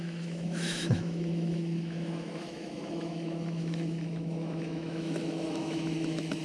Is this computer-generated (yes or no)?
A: yes